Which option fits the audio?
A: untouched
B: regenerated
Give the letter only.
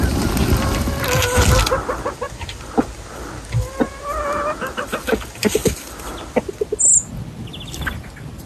A